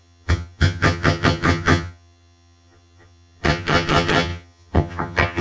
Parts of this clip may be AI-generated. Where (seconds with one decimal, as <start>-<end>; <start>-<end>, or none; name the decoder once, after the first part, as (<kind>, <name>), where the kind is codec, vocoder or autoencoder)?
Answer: 0.0-5.4 (vocoder, HiFi-GAN)